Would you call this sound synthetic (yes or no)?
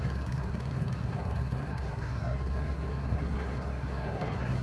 yes